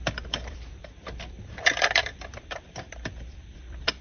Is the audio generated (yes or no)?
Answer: yes